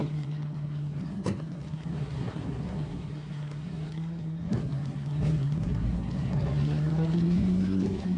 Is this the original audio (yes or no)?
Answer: no